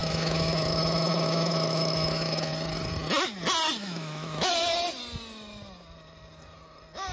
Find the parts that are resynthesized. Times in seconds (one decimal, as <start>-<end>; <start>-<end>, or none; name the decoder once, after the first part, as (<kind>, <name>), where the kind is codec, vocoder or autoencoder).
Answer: 0.0-2.5 (autoencoder, DAC-VAE); 3.8-4.5